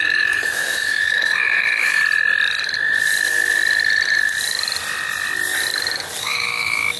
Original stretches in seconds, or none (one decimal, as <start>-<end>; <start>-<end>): 2.0-6.2